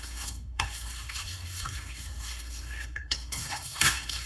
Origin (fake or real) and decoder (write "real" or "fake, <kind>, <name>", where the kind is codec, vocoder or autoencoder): fake, codec, SNAC